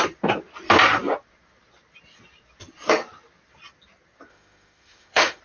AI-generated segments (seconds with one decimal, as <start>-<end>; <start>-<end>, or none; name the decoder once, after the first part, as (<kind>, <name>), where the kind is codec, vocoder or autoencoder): 4.3-5.4 (autoencoder, DAC-VAE)